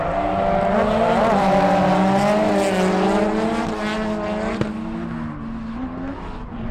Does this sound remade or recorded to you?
recorded